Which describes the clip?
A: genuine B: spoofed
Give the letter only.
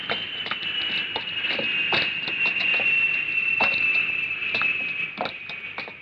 A